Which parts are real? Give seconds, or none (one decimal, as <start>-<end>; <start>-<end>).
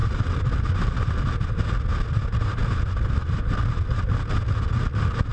0.0-5.3